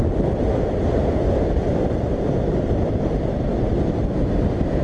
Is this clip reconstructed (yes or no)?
yes